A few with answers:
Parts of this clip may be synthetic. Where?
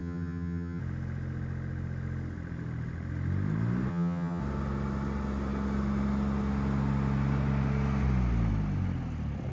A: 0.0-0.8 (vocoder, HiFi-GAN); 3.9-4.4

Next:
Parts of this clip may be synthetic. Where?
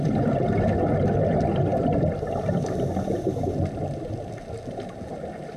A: none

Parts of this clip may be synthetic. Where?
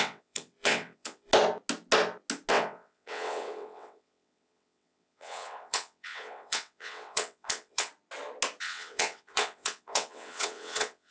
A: 0.0-1.3 (vocoder, WaveNeXt); 2.5-7.9; 8.6-11.1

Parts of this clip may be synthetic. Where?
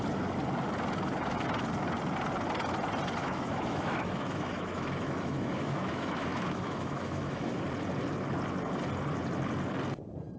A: 3.2-7.6 (autoencoder, DAC-VAE)